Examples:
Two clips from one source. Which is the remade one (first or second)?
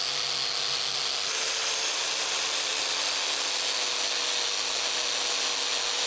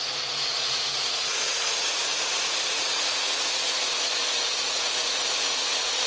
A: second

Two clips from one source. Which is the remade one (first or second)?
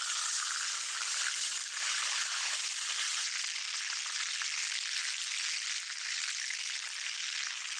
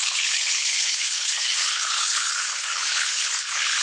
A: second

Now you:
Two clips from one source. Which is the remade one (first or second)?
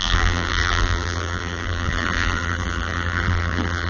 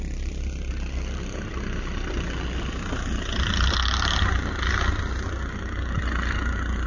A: first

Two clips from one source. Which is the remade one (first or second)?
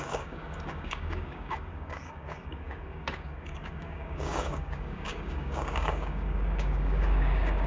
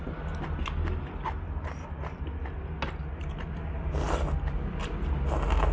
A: first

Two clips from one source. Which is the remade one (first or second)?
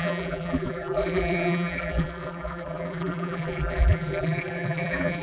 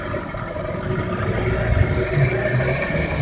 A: first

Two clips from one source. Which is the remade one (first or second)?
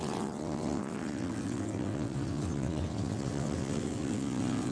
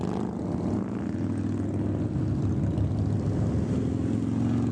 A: first